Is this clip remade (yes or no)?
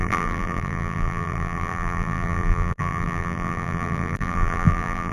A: yes